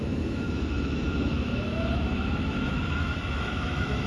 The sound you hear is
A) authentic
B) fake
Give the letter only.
B